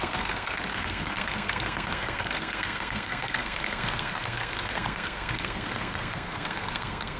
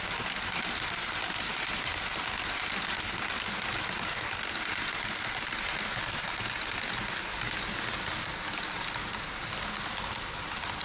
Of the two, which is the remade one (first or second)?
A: first